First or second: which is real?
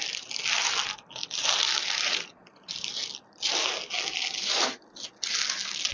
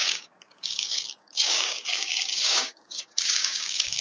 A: first